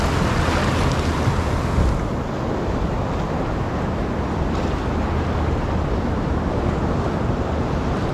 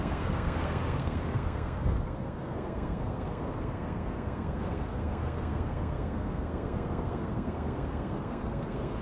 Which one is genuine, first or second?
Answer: first